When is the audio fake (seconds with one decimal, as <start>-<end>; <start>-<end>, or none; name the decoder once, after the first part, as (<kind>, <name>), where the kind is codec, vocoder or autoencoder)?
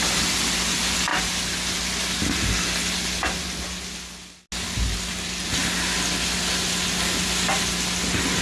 none